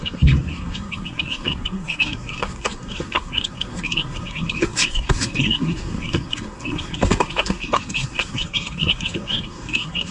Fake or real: fake